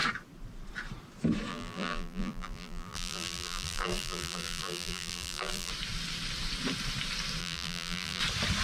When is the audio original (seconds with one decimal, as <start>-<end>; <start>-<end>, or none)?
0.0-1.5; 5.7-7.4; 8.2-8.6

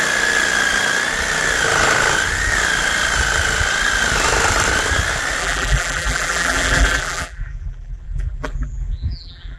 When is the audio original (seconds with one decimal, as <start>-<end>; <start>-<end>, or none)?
0.0-5.4

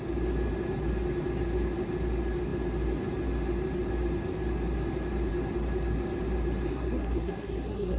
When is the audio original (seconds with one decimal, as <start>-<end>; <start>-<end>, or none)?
0.0-6.7